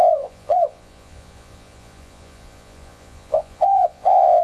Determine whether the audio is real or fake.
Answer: fake